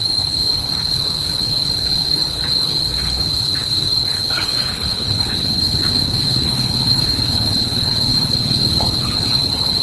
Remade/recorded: remade